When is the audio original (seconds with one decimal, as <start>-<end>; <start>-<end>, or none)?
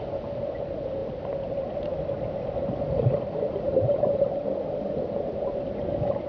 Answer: 0.0-6.3